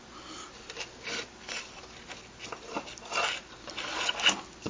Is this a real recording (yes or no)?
yes